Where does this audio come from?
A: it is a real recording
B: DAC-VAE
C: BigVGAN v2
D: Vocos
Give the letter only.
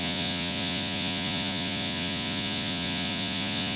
D